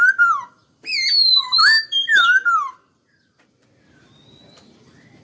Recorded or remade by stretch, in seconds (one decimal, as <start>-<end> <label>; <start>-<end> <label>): 0.0-5.2 recorded